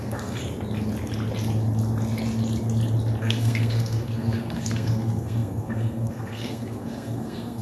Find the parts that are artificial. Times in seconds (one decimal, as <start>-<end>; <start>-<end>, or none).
0.0-0.4; 3.2-7.6